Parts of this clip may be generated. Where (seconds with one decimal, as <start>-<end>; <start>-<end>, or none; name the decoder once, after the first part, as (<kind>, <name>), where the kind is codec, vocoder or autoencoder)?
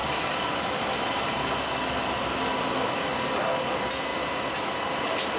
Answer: 0.0-0.7 (codec, DAC)